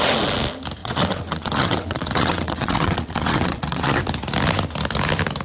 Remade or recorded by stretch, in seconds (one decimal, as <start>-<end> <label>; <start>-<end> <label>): 0.0-0.8 recorded; 0.8-4.0 remade; 4.0-5.4 recorded